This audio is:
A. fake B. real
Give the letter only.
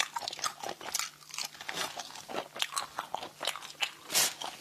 B